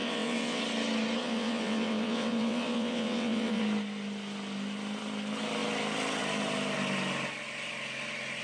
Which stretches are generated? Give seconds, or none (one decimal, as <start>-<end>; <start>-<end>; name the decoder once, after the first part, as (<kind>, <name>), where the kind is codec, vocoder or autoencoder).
0.0-0.6 (vocoder, WaveNeXt); 1.2-3.6